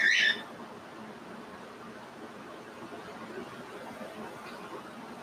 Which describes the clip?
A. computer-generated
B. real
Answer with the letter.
B